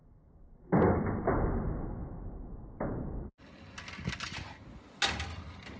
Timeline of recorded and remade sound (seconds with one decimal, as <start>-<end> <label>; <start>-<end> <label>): 0.0-5.8 recorded